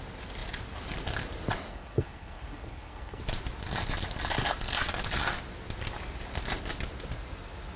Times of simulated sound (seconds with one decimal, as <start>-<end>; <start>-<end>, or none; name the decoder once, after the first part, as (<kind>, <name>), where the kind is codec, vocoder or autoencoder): 1.7-3.2 (codec, SNAC)